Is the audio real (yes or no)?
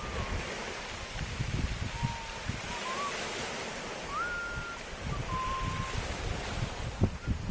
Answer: yes